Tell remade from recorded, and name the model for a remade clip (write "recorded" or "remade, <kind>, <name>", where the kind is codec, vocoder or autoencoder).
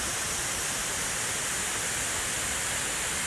recorded